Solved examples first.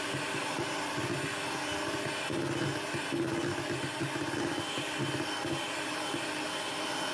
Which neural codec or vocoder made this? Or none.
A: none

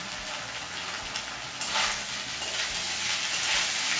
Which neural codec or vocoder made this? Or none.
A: none